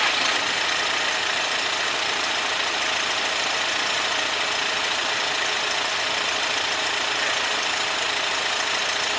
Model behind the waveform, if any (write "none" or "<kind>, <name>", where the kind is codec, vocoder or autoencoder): none